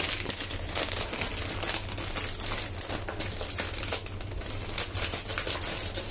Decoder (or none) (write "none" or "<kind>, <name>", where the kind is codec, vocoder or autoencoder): none